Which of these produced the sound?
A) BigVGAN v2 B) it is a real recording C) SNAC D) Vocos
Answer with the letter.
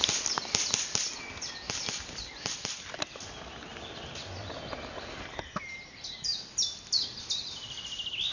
B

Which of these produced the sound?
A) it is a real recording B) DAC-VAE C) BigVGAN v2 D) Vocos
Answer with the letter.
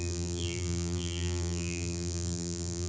C